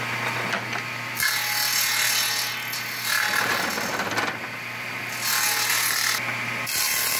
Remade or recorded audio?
recorded